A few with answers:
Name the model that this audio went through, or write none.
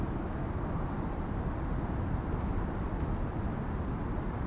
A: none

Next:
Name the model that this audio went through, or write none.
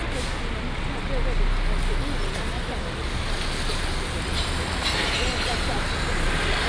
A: none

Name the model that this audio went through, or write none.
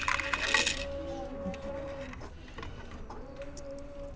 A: none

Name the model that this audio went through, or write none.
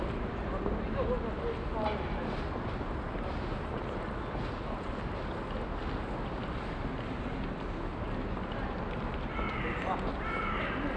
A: none